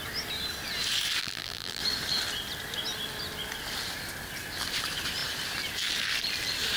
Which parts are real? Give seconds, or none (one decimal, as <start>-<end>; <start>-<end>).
0.0-1.2; 1.8-6.8